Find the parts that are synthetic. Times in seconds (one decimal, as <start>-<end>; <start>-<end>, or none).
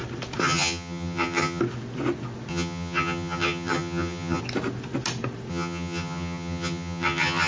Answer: 0.4-1.6; 2.5-4.4; 5.5-7.5